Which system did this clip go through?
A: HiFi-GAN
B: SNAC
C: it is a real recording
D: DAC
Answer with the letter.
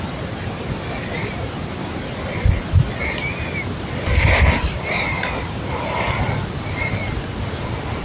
C